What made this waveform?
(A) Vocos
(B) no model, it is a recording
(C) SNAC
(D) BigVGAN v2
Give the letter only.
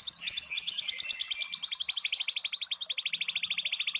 B